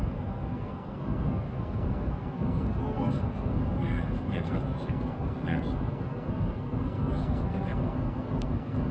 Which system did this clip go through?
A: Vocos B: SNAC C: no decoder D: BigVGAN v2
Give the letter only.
B